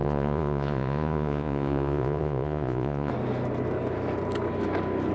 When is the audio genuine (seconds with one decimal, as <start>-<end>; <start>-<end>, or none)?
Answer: 3.1-5.1